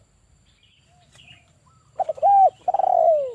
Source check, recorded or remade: recorded